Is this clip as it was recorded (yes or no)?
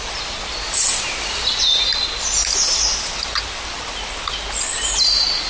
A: yes